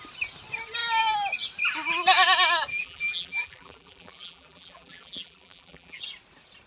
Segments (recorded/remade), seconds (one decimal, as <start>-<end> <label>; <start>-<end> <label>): 0.0-2.7 recorded; 2.7-6.0 remade; 6.0-6.7 recorded